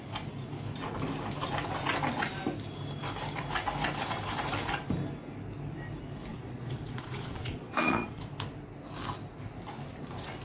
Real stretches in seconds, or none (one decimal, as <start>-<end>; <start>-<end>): 0.0-6.3; 8.3-10.4